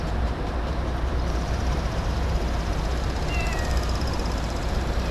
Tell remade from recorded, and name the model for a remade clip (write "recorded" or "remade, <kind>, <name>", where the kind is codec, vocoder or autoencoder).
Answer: remade, vocoder, BigVGAN v2